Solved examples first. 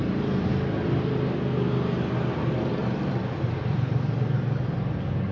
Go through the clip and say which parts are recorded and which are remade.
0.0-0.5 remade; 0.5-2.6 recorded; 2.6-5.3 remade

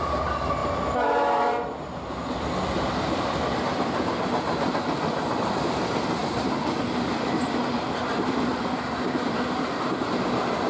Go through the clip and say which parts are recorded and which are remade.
0.0-8.5 recorded; 8.5-10.2 remade; 10.2-10.7 recorded